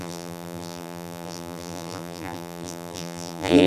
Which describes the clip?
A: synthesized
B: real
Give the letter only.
A